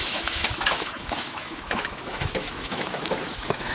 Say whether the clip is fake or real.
fake